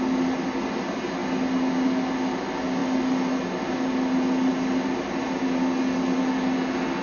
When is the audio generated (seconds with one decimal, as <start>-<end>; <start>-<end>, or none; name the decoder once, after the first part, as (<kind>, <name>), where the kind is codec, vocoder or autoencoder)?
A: none